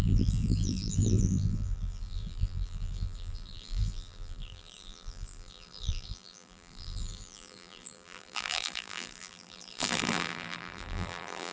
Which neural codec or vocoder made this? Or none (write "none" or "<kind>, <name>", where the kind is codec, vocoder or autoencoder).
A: vocoder, BigVGAN v2